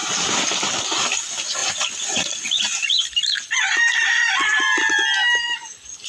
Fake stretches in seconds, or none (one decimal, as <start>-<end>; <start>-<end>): 0.8-1.6; 5.2-6.1